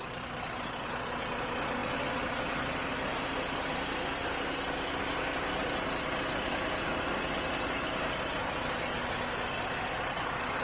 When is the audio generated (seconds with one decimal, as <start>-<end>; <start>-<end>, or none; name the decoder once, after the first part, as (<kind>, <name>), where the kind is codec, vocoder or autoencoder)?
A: none